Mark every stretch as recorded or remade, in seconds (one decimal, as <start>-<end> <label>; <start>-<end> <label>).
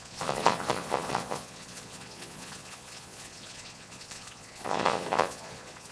0.0-5.9 remade